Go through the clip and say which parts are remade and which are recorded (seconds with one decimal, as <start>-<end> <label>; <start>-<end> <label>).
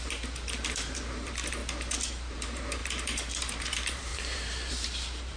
0.0-1.6 remade; 1.6-2.3 recorded; 2.3-5.4 remade